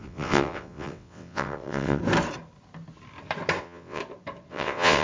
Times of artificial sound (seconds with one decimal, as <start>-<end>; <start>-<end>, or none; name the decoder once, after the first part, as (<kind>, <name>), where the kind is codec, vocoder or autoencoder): 0.0-2.0 (vocoder, WaveNeXt); 3.6-4.0; 4.5-5.0